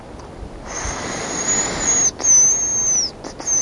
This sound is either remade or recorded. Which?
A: recorded